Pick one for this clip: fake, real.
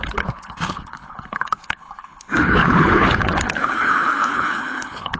fake